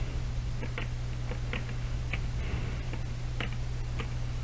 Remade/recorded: recorded